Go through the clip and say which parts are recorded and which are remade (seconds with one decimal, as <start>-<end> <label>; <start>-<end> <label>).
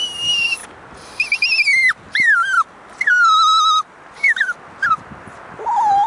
0.0-6.1 recorded